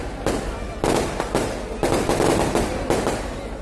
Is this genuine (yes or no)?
yes